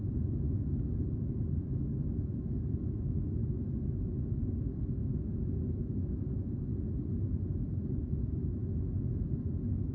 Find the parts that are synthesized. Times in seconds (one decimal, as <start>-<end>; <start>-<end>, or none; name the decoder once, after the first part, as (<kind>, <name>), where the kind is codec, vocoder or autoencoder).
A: 0.0-6.7 (autoencoder, DAC-VAE); 8.0-8.6; 9.4-9.9